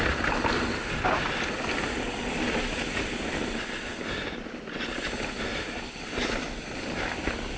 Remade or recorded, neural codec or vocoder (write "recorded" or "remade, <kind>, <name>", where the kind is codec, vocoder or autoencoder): recorded